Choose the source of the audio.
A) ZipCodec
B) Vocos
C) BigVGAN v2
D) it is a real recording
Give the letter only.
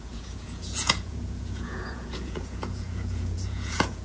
B